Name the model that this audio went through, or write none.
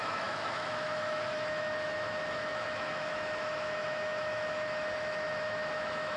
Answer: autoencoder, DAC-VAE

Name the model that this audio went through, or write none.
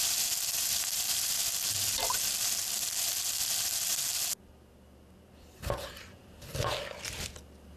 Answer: none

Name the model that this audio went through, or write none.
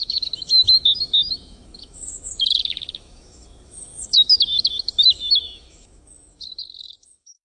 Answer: autoencoder, DAC-VAE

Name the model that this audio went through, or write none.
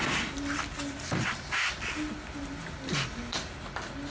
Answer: none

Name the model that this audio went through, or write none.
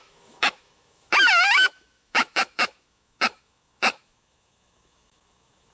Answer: autoencoder, DAC-VAE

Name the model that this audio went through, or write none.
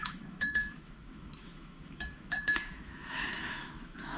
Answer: autoencoder, DAC-VAE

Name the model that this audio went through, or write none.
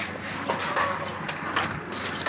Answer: none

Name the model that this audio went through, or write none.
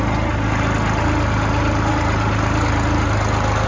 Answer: none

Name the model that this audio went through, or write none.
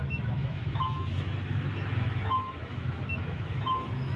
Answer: autoencoder, DAC-VAE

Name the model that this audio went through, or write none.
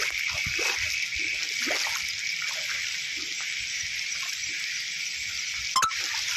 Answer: none